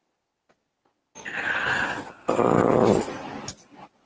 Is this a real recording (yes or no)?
yes